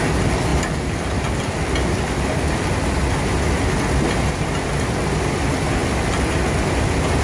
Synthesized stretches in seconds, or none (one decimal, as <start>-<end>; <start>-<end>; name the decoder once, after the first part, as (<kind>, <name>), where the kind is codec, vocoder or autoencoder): none